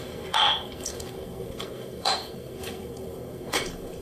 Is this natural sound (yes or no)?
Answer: no